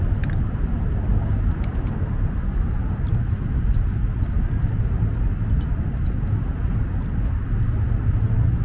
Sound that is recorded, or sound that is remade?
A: recorded